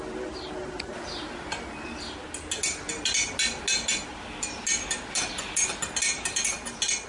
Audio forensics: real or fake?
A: real